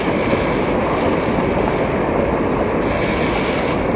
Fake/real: real